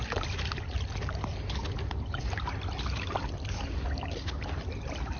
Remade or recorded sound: recorded